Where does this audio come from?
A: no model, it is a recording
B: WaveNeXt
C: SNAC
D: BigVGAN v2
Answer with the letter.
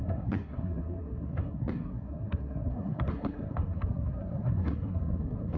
C